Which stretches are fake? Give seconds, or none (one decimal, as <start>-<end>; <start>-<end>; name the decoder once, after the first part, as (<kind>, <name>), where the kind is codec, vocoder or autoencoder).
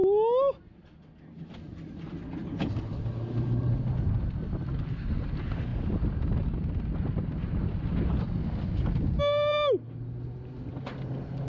none